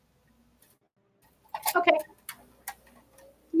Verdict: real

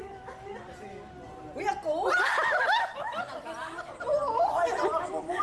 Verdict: real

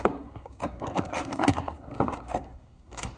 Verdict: fake